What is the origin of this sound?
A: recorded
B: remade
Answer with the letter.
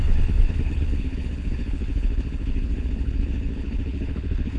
B